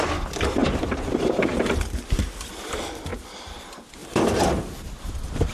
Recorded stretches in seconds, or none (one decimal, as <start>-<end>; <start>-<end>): 0.0-0.6; 2.2-4.0; 5.1-5.5